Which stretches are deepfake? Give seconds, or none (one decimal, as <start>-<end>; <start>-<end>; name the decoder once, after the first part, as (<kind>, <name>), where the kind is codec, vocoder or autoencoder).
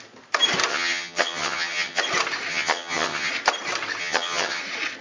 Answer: 0.7-2.0 (vocoder, HiFi-GAN); 2.5-3.3; 4.0-4.6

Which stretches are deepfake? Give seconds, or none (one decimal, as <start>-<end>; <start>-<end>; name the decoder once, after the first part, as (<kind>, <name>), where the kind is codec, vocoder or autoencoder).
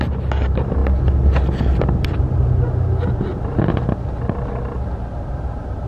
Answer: none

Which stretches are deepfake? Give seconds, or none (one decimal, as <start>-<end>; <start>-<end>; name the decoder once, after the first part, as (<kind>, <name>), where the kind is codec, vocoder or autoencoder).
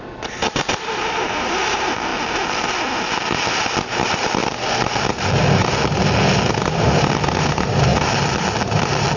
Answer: 0.0-2.1 (vocoder, BigVGAN v2); 3.9-4.4; 6.7-7.9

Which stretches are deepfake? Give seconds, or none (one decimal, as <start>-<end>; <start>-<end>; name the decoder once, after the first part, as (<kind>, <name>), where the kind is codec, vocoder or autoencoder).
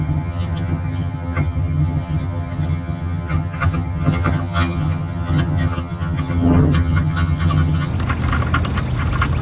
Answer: 0.0-7.9 (vocoder, HiFi-GAN)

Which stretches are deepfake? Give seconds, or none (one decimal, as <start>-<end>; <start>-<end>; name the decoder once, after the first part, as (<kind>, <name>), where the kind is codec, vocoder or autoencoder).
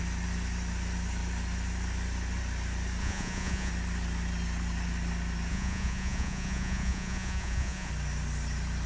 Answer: 3.0-3.7 (vocoder, Vocos); 5.5-7.9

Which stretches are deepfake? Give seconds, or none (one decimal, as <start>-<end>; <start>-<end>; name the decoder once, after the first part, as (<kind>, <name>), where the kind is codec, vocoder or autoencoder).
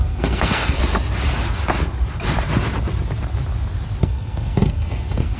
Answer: 0.0-0.8 (codec, SNAC); 4.0-5.4